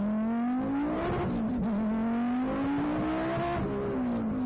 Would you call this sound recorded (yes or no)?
yes